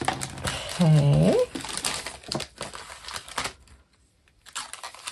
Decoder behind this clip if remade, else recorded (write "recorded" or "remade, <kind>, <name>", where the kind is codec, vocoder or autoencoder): recorded